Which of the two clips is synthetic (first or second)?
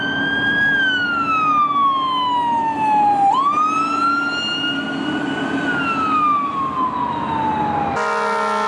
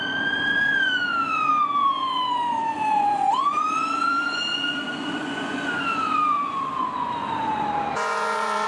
second